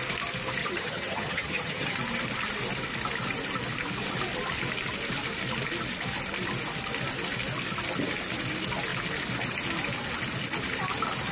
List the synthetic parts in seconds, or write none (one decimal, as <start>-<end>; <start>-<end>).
0.6-2.0